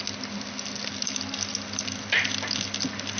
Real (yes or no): yes